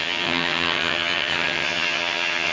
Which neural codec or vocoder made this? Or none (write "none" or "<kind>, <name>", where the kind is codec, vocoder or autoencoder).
vocoder, HiFi-GAN